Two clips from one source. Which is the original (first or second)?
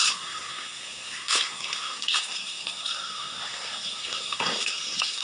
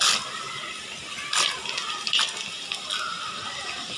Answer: second